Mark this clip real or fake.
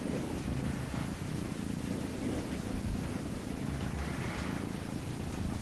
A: real